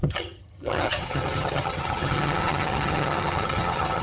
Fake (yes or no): yes